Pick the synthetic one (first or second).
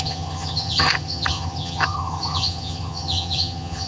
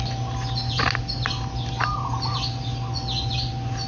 first